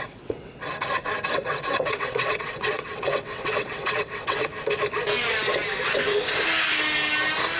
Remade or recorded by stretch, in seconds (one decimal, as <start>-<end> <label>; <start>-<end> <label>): 0.0-0.6 remade; 0.6-1.3 recorded; 1.3-4.5 remade; 4.5-7.6 recorded